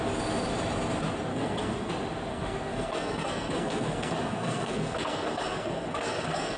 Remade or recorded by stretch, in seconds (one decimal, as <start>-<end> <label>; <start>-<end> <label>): 0.0-1.3 recorded; 1.3-1.9 remade; 1.9-2.3 recorded; 2.3-6.6 remade